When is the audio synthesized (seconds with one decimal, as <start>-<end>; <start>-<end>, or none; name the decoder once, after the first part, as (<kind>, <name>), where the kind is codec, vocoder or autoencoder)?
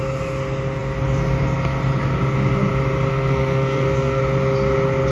3.1-4.2 (codec, SNAC)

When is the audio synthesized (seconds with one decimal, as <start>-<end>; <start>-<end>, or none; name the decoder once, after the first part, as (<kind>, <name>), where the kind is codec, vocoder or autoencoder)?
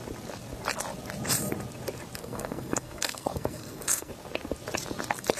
2.2-4.1 (codec, SNAC)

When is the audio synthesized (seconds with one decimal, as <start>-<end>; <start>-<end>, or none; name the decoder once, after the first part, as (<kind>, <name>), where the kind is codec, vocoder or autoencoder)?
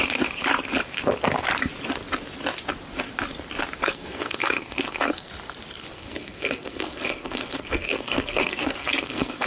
3.8-5.3 (codec, SNAC); 5.9-9.5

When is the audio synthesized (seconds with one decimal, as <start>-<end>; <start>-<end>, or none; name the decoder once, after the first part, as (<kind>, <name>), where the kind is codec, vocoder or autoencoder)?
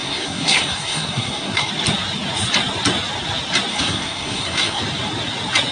0.0-1.7 (codec, SNAC); 3.7-4.8